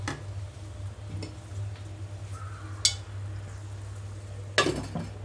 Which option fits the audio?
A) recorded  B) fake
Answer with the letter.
A